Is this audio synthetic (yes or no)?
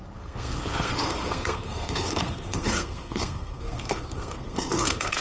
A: yes